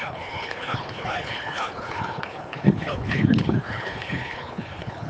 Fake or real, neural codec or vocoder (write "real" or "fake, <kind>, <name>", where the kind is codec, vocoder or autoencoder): fake, codec, HILCodec